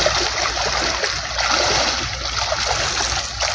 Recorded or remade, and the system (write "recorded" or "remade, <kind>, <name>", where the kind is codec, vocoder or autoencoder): recorded